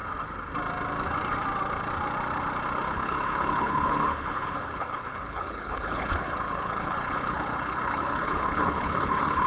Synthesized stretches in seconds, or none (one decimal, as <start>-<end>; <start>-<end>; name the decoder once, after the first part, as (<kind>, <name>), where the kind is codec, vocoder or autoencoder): 2.9-9.5 (codec, HILCodec)